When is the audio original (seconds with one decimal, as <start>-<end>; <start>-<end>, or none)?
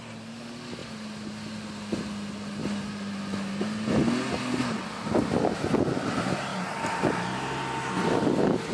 0.0-2.6; 3.2-8.7